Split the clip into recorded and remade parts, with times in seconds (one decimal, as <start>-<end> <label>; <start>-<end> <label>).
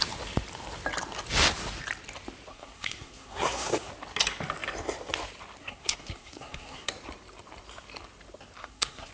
0.0-2.5 recorded; 2.5-3.9 remade; 3.9-5.6 recorded; 5.6-6.9 remade; 6.9-8.6 recorded; 8.6-9.1 remade